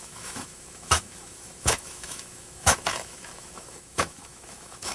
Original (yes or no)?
no